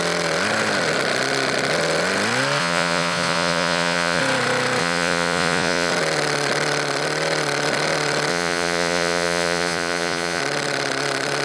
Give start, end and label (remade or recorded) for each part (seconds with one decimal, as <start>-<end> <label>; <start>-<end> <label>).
0.0-2.6 recorded; 2.6-4.2 remade; 4.2-4.8 recorded; 4.8-5.9 remade; 5.9-8.3 recorded; 8.3-10.4 remade; 10.4-11.4 recorded